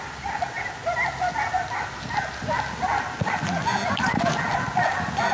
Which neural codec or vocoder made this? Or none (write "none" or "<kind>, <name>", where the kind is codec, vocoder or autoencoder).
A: none